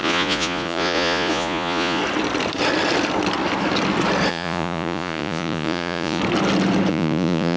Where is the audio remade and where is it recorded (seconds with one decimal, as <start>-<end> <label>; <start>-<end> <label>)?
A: 0.0-2.0 remade; 2.0-4.3 recorded; 4.3-6.2 remade; 6.2-6.9 recorded; 6.9-7.6 remade